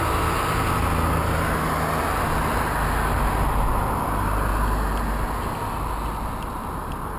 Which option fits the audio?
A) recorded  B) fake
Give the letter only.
A